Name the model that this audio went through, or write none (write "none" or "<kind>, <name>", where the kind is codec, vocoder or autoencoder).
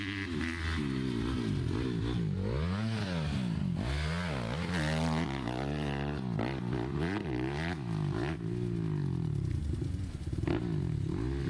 none